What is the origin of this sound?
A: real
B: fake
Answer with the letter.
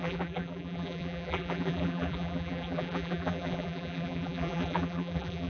B